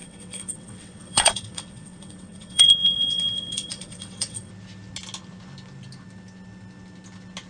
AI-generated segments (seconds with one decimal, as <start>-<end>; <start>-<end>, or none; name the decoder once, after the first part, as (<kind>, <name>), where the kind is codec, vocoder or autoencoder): 0.0-4.5 (vocoder, WaveNeXt)